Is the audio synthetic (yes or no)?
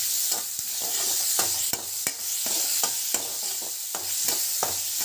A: no